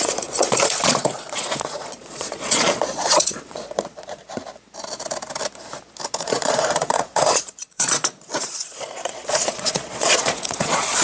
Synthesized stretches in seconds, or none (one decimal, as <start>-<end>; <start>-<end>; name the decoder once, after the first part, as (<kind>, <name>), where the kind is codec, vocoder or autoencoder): 0.0-4.2 (vocoder, Vocos); 6.2-11.0